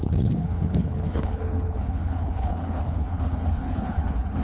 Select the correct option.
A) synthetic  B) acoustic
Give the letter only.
A